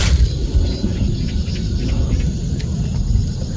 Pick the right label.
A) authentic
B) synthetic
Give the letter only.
A